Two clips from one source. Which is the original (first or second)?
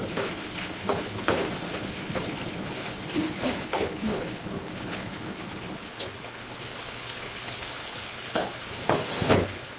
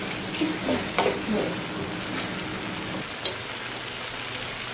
second